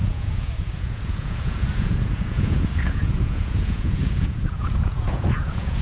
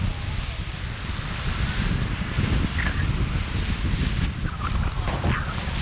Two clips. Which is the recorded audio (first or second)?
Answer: second